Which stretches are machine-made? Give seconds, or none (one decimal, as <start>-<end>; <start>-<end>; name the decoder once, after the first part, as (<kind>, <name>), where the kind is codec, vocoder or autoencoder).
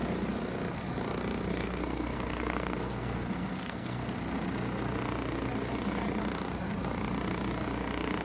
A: 1.5-4.0 (codec, SNAC)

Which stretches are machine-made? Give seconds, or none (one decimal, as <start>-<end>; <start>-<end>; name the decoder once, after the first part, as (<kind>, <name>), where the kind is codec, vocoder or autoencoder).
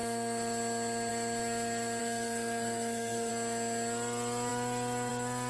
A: 2.0-3.3 (codec, SNAC)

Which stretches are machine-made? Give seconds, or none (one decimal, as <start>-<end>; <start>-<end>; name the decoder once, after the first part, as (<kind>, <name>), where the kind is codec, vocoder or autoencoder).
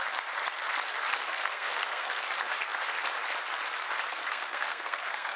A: 1.1-2.2 (codec, SNAC); 4.1-5.4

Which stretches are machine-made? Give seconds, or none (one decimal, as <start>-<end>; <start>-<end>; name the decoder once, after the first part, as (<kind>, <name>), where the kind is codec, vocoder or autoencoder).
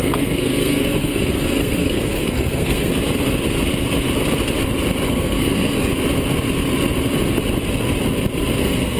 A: 0.0-2.9 (codec, SNAC); 5.1-5.9; 8.6-9.0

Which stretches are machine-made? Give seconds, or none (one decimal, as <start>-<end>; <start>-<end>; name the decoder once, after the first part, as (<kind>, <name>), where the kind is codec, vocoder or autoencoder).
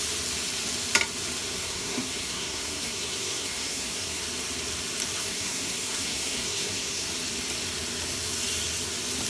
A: 1.5-4.2 (codec, SNAC); 5.2-7.1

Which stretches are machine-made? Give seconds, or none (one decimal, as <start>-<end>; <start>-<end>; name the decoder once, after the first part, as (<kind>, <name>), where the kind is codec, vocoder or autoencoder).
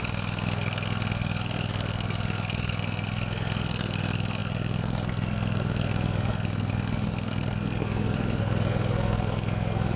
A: 0.0-10.0 (codec, SNAC)